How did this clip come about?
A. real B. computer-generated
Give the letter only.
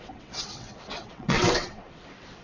B